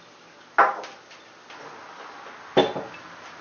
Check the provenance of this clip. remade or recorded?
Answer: recorded